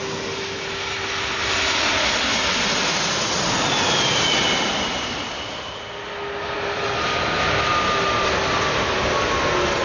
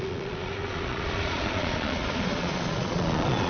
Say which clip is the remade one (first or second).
second